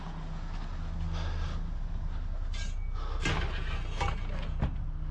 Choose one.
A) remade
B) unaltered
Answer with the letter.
B